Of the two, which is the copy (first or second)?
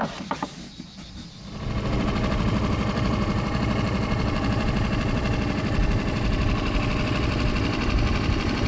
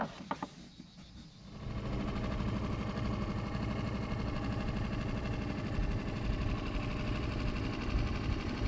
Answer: first